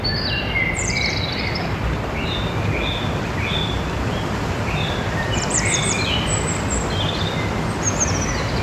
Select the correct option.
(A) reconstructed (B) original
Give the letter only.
A